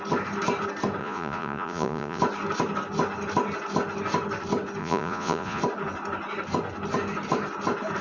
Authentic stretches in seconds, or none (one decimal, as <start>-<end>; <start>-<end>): 0.0-1.0; 2.2-4.8; 5.6-8.0